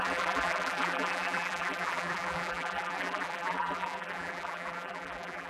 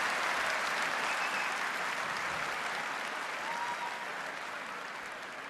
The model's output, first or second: first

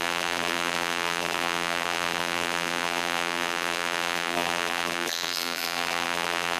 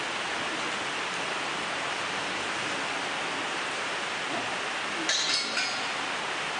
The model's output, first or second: first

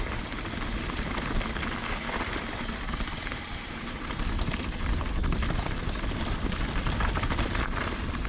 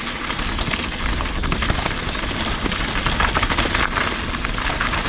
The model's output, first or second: first